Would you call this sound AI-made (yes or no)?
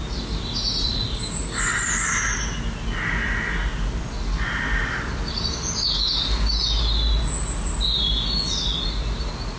no